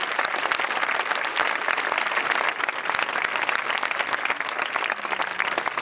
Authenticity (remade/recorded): recorded